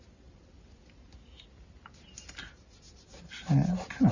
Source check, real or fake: real